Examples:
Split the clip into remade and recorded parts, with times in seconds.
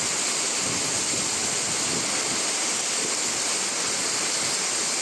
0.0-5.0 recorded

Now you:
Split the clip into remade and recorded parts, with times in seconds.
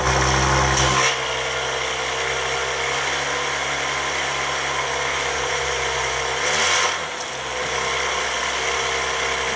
0.0-5.1 recorded; 5.1-6.2 remade; 6.2-9.6 recorded